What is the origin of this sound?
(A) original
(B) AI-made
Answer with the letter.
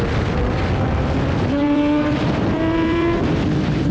B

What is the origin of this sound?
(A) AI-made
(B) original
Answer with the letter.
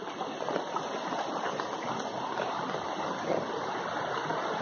B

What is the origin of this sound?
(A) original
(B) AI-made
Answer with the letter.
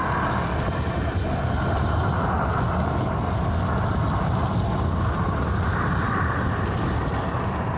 A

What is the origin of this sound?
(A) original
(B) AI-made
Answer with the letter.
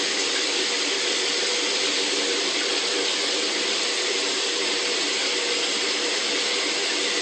B